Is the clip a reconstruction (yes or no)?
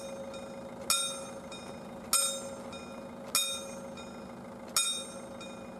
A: no